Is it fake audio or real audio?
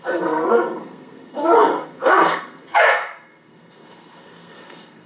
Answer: fake